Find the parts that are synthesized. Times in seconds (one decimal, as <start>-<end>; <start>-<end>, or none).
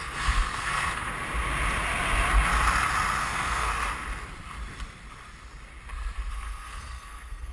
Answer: 0.0-1.1; 3.2-3.7; 6.3-7.5